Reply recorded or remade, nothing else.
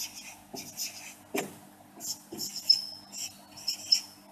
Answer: recorded